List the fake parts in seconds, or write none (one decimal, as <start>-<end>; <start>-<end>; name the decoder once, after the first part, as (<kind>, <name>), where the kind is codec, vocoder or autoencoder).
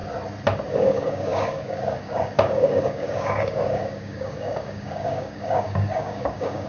0.7-6.7 (codec, DAC)